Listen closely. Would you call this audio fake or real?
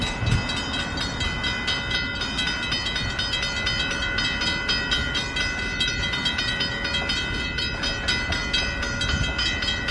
real